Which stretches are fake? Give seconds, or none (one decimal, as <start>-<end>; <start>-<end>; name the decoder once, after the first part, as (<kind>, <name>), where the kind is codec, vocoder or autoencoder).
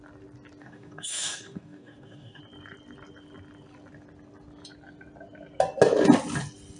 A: 0.6-2.4 (codec, DAC)